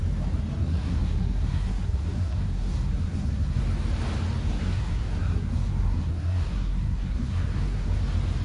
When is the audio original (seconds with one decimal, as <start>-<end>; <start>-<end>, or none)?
0.0-0.6; 3.6-4.5; 8.0-8.4